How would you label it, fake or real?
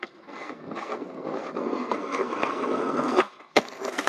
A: fake